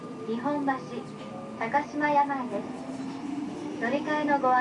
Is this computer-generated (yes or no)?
no